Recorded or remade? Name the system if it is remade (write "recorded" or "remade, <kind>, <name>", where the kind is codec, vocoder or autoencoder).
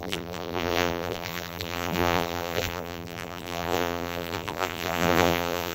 remade, vocoder, BigVGAN v2